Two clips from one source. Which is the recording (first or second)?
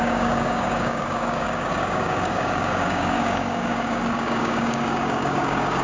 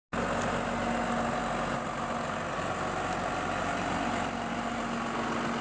second